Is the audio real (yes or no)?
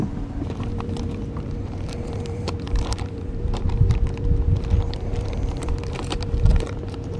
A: no